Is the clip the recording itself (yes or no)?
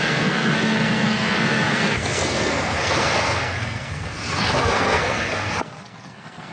no